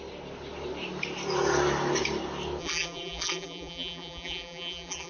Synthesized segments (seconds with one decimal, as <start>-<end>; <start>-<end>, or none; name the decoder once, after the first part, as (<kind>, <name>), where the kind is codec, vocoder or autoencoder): 2.6-5.1 (vocoder, BigVGAN v2)